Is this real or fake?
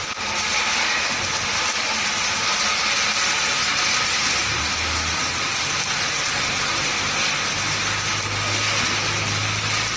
real